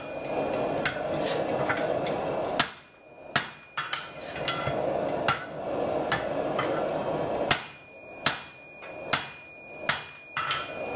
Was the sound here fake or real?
real